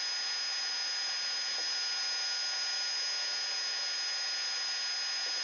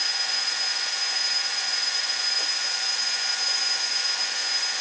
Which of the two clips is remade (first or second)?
second